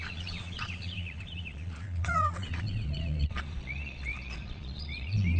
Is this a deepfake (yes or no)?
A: yes